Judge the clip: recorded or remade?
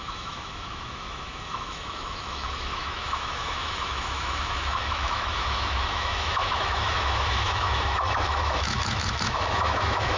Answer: remade